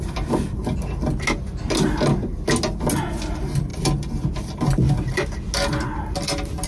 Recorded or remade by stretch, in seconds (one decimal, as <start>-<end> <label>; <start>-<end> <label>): 0.0-6.7 recorded